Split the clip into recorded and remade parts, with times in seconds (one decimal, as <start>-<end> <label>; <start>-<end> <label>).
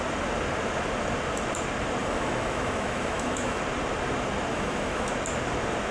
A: 0.0-2.0 recorded; 2.0-3.6 remade; 3.6-4.5 recorded; 4.5-5.1 remade; 5.1-5.9 recorded